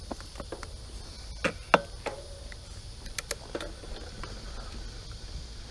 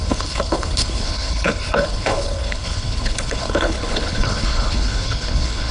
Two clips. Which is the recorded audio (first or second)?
first